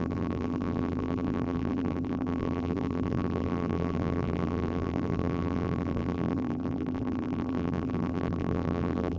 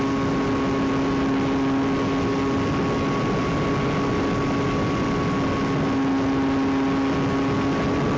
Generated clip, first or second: first